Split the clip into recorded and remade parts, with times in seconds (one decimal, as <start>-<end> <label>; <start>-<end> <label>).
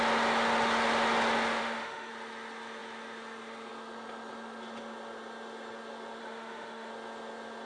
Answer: 0.0-1.6 recorded; 1.6-2.1 remade; 2.1-6.2 recorded; 6.2-6.9 remade; 6.9-7.7 recorded